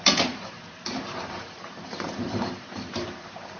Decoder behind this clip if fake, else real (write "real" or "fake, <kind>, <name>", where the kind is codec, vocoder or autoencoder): fake, vocoder, BigVGAN v2